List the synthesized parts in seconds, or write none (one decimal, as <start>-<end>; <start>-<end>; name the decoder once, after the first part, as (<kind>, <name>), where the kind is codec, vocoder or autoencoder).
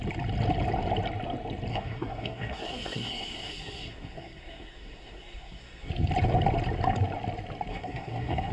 1.7-5.9 (codec, SNAC); 7.7-8.5